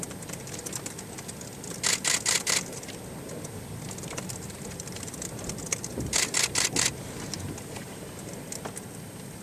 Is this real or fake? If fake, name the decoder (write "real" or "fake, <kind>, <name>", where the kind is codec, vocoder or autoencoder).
real